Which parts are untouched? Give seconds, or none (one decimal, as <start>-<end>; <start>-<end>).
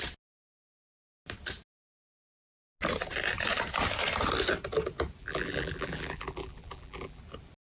0.0-5.2; 7.2-7.7